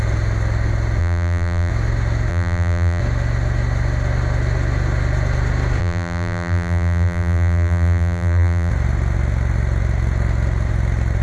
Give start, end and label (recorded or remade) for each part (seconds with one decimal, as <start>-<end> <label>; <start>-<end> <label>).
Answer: 0.0-1.0 recorded; 1.0-1.7 remade; 1.7-2.3 recorded; 2.3-3.0 remade; 3.0-5.8 recorded; 5.8-8.7 remade; 8.7-11.2 recorded